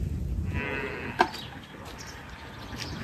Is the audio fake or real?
real